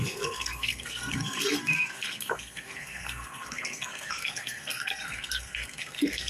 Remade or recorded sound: remade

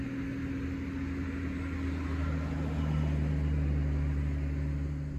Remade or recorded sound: recorded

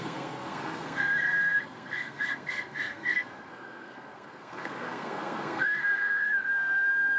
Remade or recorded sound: remade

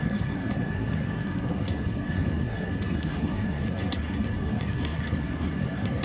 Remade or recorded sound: remade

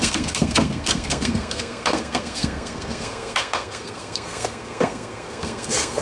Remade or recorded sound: remade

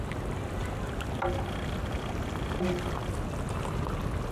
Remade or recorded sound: recorded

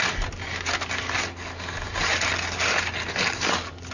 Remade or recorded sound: recorded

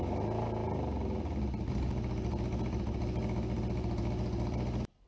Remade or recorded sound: recorded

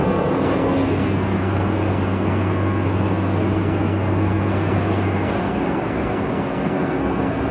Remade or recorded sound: remade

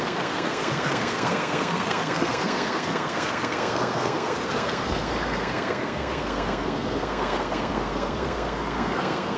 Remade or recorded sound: remade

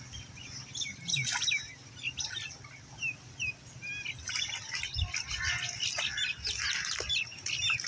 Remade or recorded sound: recorded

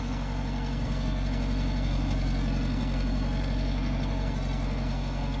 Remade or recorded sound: remade